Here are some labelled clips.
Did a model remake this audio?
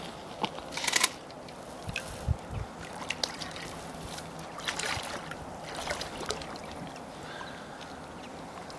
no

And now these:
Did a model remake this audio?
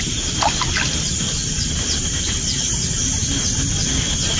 no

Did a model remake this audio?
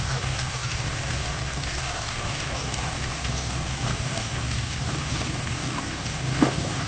yes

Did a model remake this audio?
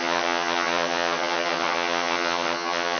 yes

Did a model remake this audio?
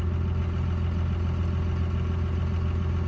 no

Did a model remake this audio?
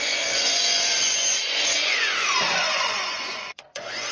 yes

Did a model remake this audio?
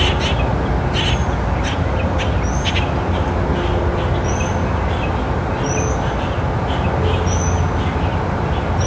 no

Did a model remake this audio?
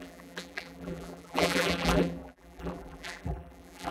yes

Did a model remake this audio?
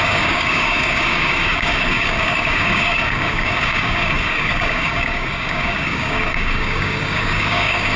yes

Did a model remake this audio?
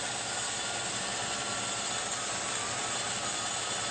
no